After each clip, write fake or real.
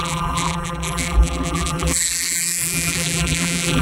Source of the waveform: fake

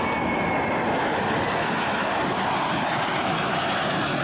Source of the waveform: real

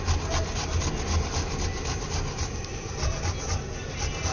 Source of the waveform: real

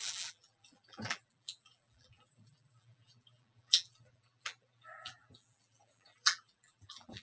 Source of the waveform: fake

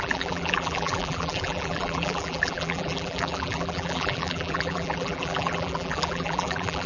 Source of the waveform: fake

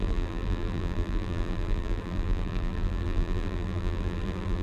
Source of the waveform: fake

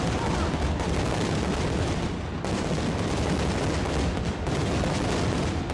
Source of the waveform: real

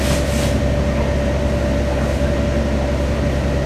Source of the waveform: real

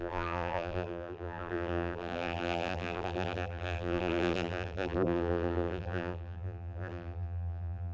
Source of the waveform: fake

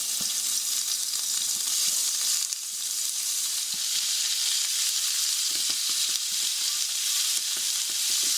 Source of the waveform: fake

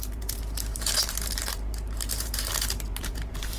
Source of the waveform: fake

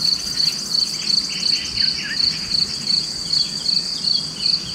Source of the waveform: real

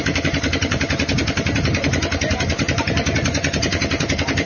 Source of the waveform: fake